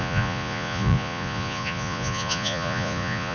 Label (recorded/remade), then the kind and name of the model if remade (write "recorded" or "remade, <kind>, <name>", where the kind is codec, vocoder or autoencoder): remade, vocoder, Vocos